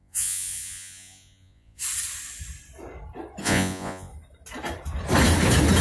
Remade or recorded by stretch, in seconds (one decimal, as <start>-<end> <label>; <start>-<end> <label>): 0.0-1.8 remade; 1.8-3.4 recorded; 3.4-4.1 remade; 4.1-5.8 recorded